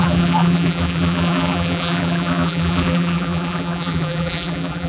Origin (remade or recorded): remade